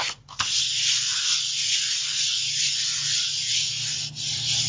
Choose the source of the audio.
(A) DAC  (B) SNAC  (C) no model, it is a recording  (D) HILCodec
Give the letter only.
C